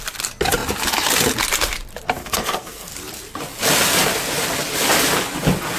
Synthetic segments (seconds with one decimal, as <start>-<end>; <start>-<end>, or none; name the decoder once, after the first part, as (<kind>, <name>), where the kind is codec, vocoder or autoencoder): 2.2-2.9 (codec, SNAC)